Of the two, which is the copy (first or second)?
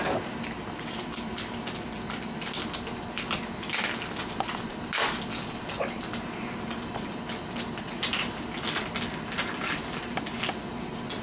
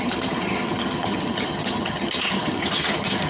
second